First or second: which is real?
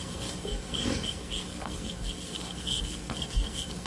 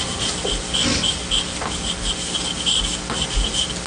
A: second